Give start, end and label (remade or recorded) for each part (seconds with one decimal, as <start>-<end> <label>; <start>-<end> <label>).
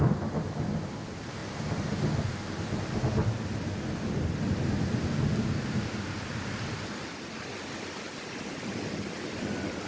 0.0-9.9 recorded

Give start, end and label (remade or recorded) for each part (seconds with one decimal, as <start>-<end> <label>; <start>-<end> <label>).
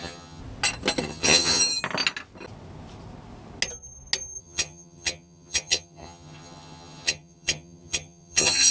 0.0-0.4 remade; 0.4-1.0 recorded; 1.0-1.6 remade; 1.6-4.4 recorded; 4.4-8.7 remade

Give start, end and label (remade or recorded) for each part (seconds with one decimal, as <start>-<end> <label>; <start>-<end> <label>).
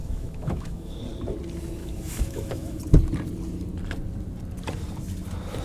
0.0-1.0 remade; 1.0-1.8 recorded; 1.8-2.8 remade; 2.8-5.6 recorded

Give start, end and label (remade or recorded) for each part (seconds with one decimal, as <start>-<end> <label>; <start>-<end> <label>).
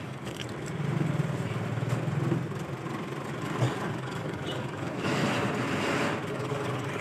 0.0-0.4 remade; 0.4-3.4 recorded; 3.4-5.2 remade; 5.2-6.3 recorded; 6.3-7.0 remade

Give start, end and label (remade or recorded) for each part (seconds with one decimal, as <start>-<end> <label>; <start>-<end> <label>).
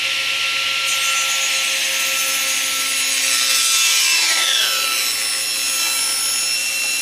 0.0-7.0 recorded